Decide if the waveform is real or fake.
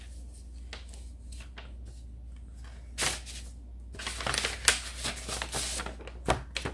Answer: real